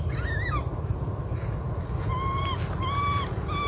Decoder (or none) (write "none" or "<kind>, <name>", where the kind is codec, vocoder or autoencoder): none